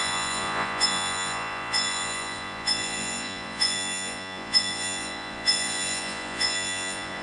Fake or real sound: fake